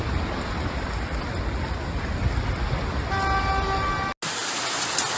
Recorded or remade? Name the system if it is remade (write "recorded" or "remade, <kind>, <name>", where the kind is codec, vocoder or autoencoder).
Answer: recorded